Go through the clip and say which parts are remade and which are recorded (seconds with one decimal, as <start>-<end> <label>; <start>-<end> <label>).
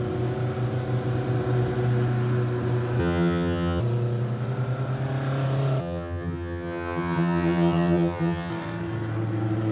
0.0-3.0 recorded; 3.0-3.8 remade; 3.8-5.8 recorded; 5.8-8.5 remade; 8.5-9.7 recorded